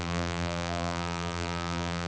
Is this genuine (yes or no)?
no